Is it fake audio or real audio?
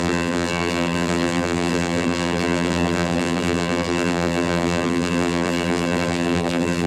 fake